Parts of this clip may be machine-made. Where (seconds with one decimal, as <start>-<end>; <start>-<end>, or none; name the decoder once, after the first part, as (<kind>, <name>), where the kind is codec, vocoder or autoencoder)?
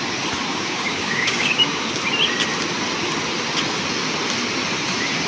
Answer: 0.5-1.8 (codec, DAC)